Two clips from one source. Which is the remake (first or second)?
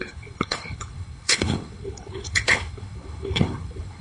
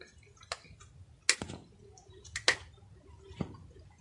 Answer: first